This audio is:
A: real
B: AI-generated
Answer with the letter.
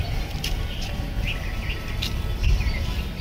A